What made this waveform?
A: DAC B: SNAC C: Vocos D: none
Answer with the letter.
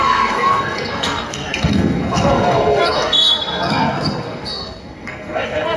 B